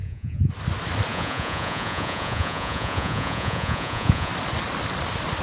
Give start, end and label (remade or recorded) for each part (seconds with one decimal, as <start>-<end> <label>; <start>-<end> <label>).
0.0-0.5 remade; 0.5-1.1 recorded; 1.1-4.3 remade; 4.3-5.4 recorded